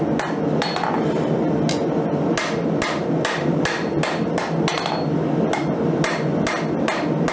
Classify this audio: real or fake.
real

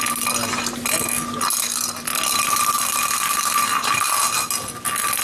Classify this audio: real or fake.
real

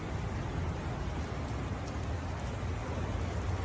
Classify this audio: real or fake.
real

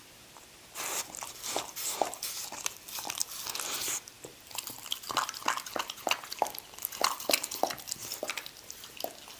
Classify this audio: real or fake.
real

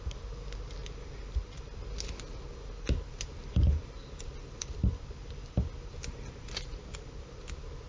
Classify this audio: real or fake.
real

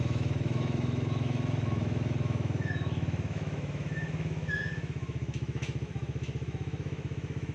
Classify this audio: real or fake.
fake